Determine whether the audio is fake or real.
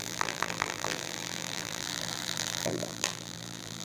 fake